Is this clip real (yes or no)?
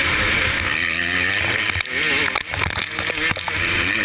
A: yes